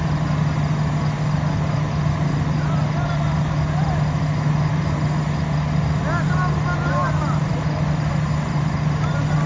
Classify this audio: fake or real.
real